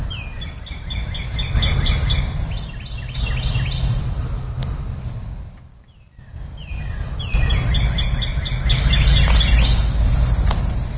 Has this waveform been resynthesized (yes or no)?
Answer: no